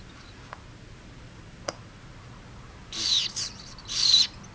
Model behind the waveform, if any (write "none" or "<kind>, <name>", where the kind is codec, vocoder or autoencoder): none